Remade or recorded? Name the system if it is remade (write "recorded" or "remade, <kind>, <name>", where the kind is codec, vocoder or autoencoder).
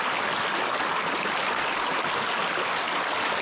recorded